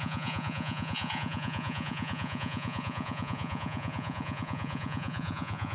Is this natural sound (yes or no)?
no